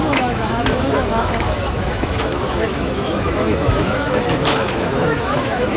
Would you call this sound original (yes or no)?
no